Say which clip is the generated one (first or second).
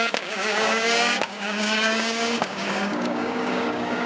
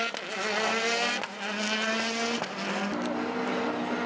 first